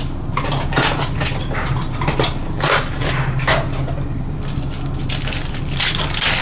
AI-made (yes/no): no